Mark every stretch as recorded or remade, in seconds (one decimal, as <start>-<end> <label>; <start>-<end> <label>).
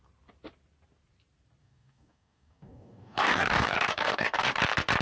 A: 0.0-1.6 recorded; 1.6-4.6 remade; 4.6-5.0 recorded